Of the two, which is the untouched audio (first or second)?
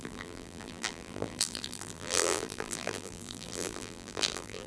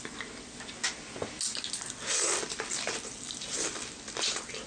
second